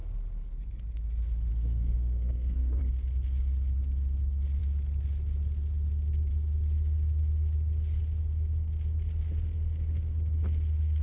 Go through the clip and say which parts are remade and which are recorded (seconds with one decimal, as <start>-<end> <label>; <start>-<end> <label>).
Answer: 0.0-1.5 recorded; 1.5-2.8 remade; 2.8-11.0 recorded